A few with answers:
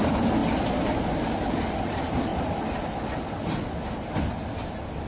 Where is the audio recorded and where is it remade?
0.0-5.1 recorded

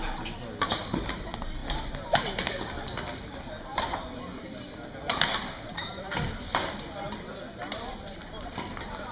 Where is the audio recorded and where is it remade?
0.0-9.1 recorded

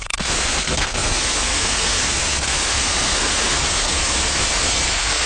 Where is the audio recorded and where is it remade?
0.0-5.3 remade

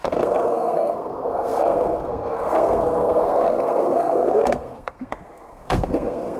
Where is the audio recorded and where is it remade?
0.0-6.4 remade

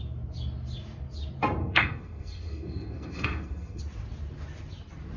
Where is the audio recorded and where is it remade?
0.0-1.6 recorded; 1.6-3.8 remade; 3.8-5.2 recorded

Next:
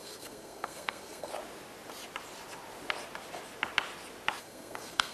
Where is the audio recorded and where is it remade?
0.0-1.3 remade; 1.3-4.4 recorded; 4.4-5.1 remade

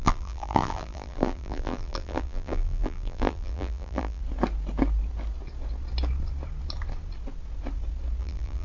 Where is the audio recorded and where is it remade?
0.0-4.2 remade; 4.2-8.2 recorded; 8.2-8.6 remade